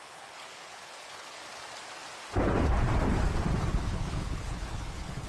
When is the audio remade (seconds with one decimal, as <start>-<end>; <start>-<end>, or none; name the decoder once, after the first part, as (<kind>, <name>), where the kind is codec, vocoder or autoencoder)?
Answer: 0.0-1.4 (codec, HILCodec); 3.7-5.3